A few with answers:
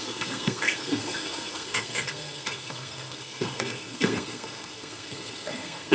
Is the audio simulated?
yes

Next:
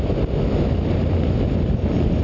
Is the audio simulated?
no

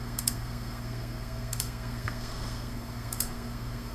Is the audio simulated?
yes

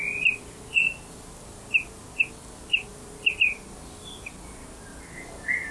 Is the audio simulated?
no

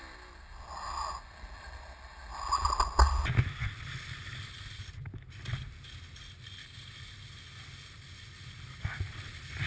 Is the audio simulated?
no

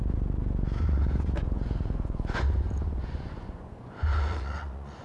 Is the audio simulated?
yes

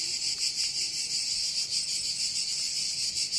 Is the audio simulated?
no